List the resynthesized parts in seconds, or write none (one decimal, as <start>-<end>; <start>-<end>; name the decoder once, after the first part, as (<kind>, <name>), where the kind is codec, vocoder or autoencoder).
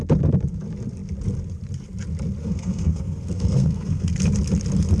2.4-4.1 (codec, SNAC)